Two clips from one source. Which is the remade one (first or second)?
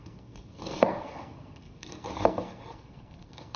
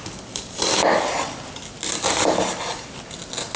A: first